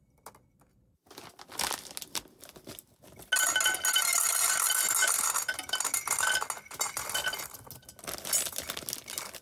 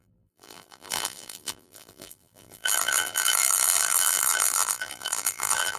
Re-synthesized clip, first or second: second